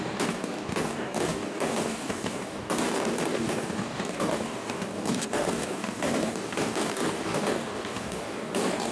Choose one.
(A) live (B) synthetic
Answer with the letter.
B